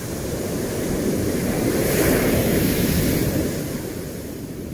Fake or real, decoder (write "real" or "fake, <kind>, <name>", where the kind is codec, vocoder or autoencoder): fake, vocoder, BigVGAN v2